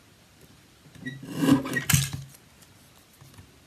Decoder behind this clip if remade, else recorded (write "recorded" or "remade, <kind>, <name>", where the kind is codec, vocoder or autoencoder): recorded